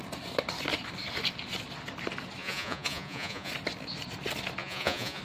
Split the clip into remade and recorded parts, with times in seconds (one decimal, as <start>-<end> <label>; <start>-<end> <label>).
0.0-2.4 recorded; 2.4-3.5 remade; 3.5-4.6 recorded; 4.6-5.2 remade